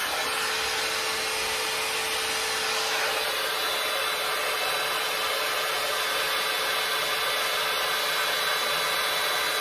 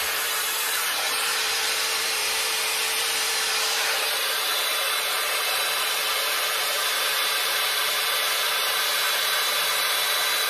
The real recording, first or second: first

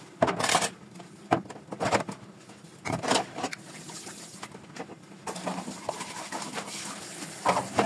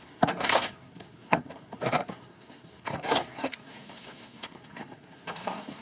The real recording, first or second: first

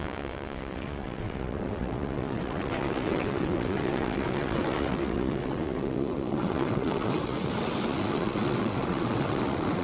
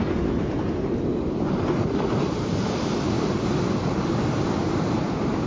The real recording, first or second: second